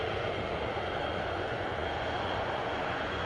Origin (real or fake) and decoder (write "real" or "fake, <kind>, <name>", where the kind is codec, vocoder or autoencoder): fake, vocoder, Vocos